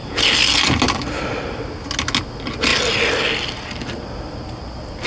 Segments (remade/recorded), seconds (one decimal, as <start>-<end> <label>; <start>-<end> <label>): 0.0-5.1 recorded